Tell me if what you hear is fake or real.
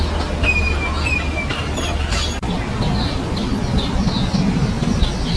real